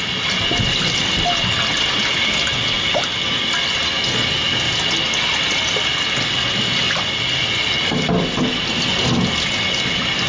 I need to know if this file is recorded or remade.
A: recorded